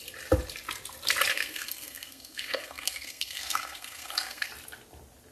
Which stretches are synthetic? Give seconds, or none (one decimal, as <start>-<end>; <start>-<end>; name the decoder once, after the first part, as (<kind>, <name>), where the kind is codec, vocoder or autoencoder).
1.3-4.5 (codec, SNAC)